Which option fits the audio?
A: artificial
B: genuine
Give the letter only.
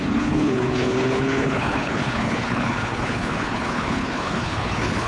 A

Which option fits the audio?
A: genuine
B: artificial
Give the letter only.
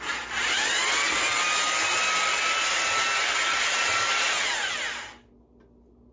A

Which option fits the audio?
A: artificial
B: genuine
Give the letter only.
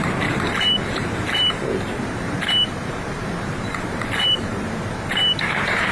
A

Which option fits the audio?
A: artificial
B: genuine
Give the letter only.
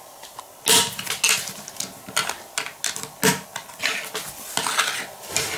B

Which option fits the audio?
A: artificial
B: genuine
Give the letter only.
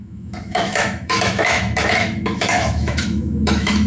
A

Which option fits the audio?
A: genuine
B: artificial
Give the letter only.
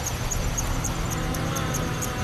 A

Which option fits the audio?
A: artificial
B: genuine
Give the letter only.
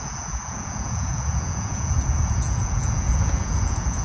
A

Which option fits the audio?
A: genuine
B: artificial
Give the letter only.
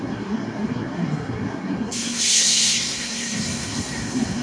B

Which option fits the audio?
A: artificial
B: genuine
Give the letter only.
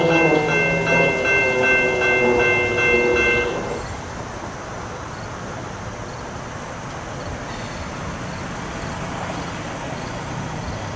B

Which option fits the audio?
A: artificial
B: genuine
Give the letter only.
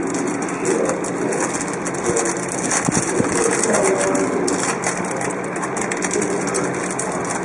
B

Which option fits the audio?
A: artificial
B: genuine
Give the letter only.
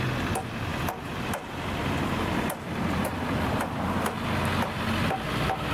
B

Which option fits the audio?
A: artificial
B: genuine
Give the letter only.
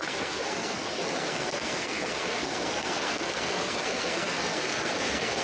A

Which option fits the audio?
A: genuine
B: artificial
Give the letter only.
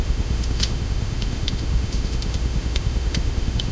B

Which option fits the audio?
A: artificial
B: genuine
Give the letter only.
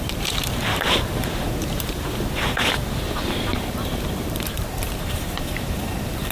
A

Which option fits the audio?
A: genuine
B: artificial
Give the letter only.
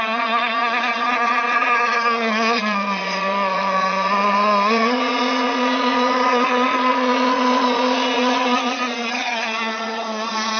B